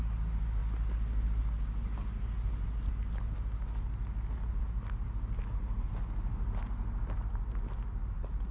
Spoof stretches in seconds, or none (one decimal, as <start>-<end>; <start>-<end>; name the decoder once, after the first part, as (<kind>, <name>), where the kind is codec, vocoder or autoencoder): none